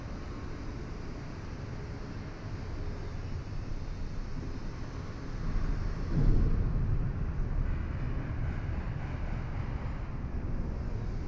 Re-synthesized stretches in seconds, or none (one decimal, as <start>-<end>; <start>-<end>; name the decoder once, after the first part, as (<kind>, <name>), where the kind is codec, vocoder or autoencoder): none

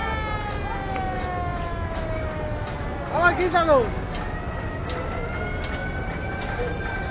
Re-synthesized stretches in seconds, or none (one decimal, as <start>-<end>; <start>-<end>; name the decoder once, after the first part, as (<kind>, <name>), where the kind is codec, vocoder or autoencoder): 1.5-2.0 (vocoder, BigVGAN v2); 6.2-7.1

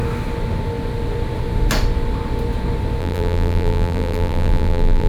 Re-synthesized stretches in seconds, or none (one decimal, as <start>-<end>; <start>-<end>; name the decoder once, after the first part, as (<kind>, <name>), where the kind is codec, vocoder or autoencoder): 3.0-5.1 (vocoder, BigVGAN v2)

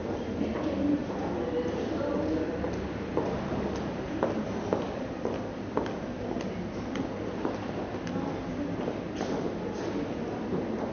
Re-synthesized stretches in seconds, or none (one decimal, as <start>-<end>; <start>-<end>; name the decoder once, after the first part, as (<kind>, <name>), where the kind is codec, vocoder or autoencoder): 0.0-0.6 (vocoder, BigVGAN v2); 1.0-6.2

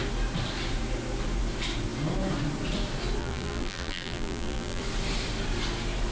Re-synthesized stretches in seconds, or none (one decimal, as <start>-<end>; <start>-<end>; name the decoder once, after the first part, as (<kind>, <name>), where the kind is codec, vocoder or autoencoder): 3.2-4.8 (vocoder, BigVGAN v2)

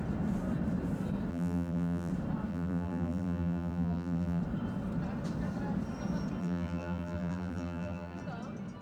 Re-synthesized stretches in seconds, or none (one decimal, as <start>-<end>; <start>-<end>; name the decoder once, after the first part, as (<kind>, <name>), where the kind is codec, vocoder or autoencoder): 1.3-2.1 (vocoder, BigVGAN v2); 2.5-4.4; 6.4-8.2

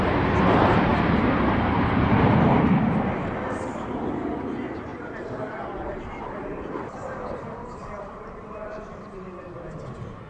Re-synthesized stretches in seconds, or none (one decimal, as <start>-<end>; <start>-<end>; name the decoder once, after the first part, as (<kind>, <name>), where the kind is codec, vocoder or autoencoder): 0.9-4.4 (vocoder, BigVGAN v2); 4.9-9.4